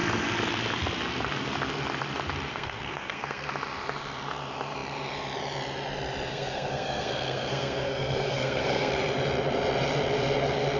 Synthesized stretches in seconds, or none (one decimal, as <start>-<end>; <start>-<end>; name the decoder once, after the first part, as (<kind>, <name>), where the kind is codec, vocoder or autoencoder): 2.5-3.5 (codec, SNAC); 6.3-8.9